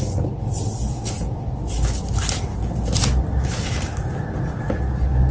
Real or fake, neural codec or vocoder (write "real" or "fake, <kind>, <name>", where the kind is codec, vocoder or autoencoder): real